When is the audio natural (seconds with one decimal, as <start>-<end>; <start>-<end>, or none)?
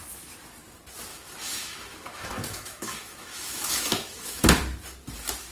0.0-1.1; 4.4-5.5